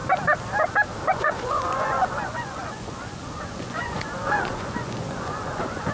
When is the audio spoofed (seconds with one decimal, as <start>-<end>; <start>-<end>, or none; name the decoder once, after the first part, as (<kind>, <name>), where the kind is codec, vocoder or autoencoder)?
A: 1.1-5.9 (vocoder, Vocos)